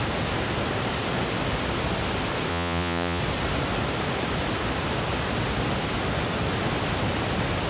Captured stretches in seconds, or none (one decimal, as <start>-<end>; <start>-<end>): 0.0-2.5; 3.2-7.7